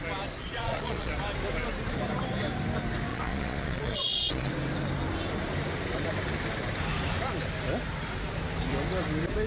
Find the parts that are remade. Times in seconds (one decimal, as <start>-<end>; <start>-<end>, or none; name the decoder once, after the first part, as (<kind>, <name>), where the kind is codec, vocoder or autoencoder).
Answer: 0.4-1.1 (vocoder, Vocos); 3.1-4.5

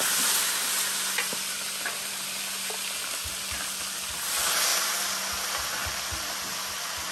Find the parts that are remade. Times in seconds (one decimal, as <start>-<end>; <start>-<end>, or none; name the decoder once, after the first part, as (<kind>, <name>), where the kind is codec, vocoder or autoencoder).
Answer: none

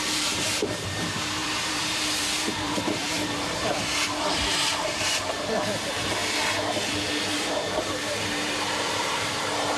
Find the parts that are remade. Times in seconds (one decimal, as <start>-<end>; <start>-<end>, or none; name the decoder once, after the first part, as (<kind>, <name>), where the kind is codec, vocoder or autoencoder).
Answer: 0.0-6.2 (vocoder, BigVGAN v2); 7.2-9.8

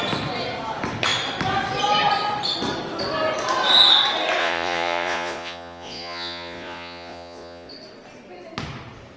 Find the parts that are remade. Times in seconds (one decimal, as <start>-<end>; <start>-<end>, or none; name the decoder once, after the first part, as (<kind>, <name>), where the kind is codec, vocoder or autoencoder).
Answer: 4.4-7.7 (vocoder, Vocos)

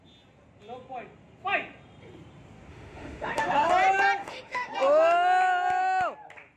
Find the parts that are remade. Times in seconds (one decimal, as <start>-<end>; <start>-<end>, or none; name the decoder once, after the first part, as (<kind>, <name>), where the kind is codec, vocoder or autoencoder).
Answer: 2.7-3.7 (autoencoder, DAC-VAE); 4.2-4.7

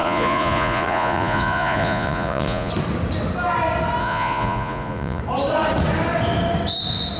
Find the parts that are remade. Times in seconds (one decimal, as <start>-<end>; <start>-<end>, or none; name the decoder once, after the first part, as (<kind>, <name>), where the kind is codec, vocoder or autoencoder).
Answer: 0.0-2.7 (vocoder, Vocos); 4.0-5.2

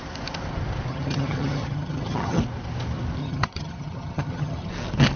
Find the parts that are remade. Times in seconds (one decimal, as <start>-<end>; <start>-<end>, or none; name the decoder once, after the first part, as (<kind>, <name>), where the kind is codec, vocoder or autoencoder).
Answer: 0.9-2.4 (vocoder, HiFi-GAN); 3.2-4.7